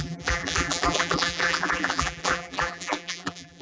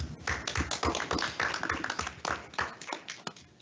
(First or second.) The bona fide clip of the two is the second